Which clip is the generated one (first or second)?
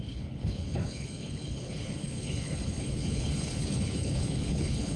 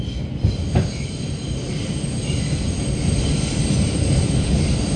first